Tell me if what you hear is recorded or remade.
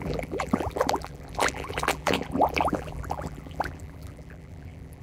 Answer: remade